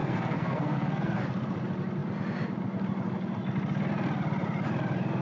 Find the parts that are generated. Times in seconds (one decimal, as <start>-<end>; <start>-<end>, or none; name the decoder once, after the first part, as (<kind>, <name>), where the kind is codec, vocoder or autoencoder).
0.0-1.2 (codec, SNAC)

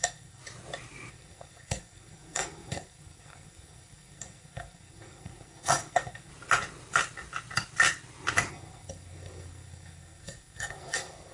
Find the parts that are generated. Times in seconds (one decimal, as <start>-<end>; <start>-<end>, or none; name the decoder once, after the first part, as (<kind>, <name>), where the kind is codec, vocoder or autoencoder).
0.0-0.4 (codec, SNAC); 1.1-6.3; 8.5-11.3